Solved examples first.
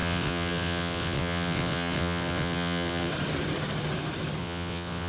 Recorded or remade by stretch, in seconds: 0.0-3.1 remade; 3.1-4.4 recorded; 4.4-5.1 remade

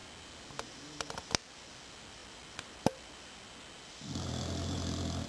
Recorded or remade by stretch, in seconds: 0.0-5.3 recorded

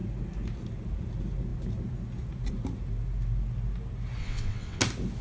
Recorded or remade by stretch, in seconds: 0.0-4.2 recorded; 4.2-4.8 remade; 4.8-5.2 recorded